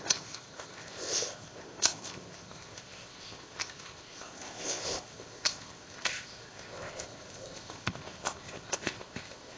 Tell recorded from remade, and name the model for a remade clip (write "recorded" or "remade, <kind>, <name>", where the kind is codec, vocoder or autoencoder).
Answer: remade, codec, ZipCodec